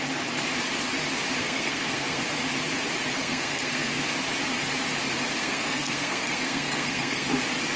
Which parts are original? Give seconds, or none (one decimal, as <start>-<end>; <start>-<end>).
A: 0.0-1.4; 2.2-3.2; 3.9-5.4; 7.3-7.8